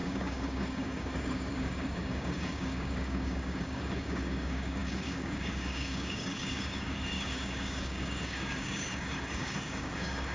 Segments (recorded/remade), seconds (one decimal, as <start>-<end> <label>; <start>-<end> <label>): 0.0-10.3 remade